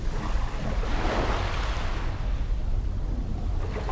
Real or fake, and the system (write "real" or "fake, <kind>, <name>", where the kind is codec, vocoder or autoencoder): real